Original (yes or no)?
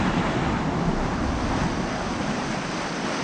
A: yes